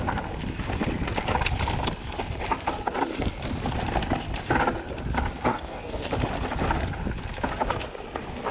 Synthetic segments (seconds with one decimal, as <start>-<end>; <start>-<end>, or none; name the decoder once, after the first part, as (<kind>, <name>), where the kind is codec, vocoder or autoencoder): 5.5-6.1 (codec, DAC)